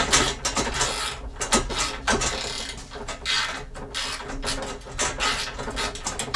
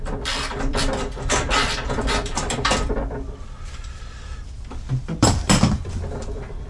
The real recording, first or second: first